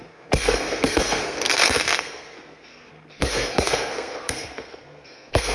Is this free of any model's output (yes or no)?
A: no